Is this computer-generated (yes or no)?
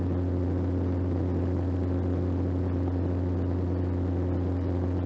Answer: no